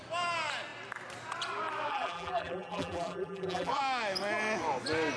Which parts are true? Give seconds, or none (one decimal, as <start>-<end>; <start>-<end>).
0.0-1.9; 3.8-5.2